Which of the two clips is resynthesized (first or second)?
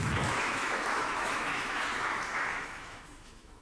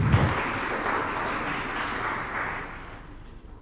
first